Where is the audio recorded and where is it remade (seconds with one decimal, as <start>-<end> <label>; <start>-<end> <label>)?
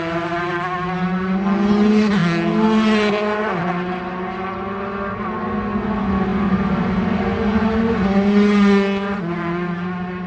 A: 0.0-10.3 recorded